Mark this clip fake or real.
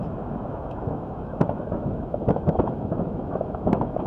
fake